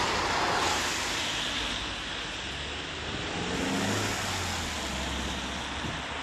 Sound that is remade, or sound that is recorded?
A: recorded